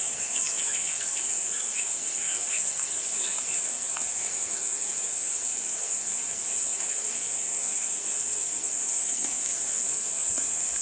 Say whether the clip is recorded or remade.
remade